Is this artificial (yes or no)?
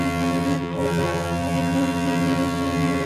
yes